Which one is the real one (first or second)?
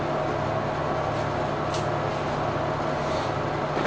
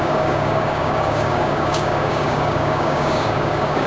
first